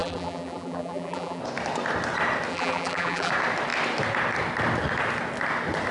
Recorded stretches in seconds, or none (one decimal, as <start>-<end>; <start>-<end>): 1.4-2.5; 3.3-5.9